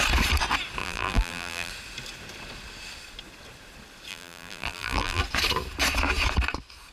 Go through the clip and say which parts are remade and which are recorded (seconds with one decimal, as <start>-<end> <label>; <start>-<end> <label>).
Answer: 0.0-0.8 recorded; 0.8-1.7 remade; 1.7-4.1 recorded; 4.1-5.2 remade; 5.2-6.9 recorded